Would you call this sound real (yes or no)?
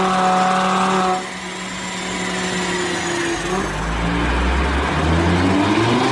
yes